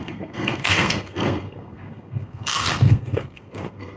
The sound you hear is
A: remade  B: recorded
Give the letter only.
A